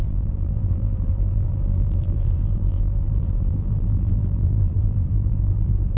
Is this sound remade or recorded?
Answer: remade